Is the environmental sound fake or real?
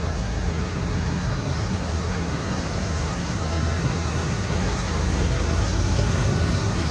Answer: fake